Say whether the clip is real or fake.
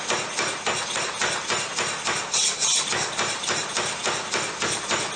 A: real